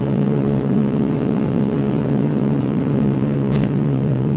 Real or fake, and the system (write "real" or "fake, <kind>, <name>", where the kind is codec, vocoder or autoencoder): fake, vocoder, WaveNeXt